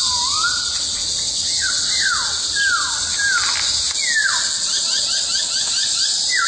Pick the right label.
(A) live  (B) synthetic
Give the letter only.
A